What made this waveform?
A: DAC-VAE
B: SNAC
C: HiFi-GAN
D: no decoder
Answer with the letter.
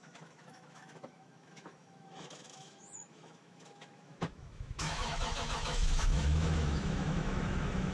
A